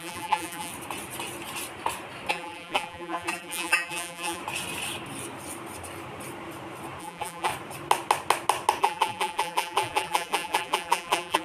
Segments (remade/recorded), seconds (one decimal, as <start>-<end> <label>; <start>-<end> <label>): 0.0-0.7 remade; 0.7-2.3 recorded; 2.3-4.4 remade; 4.4-7.0 recorded; 7.0-7.5 remade; 7.5-8.8 recorded; 8.8-11.4 remade